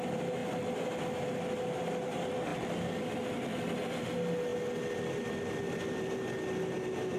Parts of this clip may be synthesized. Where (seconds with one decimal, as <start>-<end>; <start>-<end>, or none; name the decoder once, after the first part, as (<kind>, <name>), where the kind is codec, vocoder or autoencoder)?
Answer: none